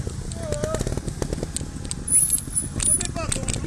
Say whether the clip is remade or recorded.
recorded